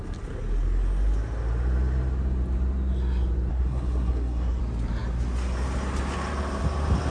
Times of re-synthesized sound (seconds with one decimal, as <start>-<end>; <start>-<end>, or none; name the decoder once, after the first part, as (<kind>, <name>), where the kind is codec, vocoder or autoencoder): 3.5-4.6 (codec, SNAC)